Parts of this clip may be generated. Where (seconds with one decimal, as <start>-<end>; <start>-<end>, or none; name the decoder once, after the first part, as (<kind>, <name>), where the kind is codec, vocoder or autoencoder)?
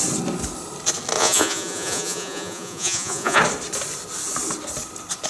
1.2-3.4 (vocoder, Vocos)